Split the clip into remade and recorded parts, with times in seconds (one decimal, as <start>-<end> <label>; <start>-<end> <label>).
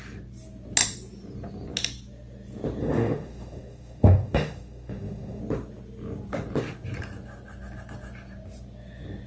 0.0-2.8 recorded; 2.8-5.4 remade; 5.4-9.3 recorded